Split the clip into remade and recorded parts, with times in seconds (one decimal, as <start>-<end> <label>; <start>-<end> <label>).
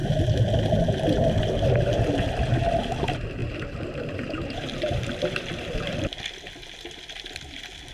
0.0-3.4 recorded; 3.4-5.5 remade; 5.5-7.9 recorded